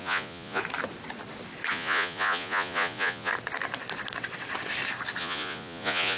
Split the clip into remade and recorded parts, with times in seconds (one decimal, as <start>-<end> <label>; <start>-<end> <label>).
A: 0.0-0.6 remade; 0.6-1.7 recorded; 1.7-3.3 remade; 3.3-5.2 recorded; 5.2-6.2 remade